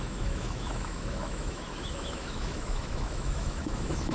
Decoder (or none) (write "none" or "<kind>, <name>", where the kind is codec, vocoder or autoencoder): autoencoder, DAC-VAE